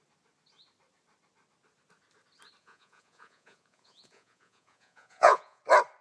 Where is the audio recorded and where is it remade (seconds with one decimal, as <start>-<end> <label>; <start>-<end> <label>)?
0.0-2.6 recorded; 2.6-5.6 remade; 5.6-6.0 recorded